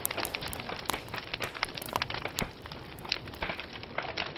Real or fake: fake